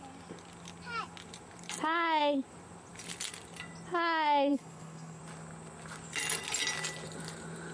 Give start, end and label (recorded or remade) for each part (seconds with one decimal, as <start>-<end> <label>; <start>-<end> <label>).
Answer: 0.0-4.5 recorded; 4.5-5.2 remade; 5.2-7.7 recorded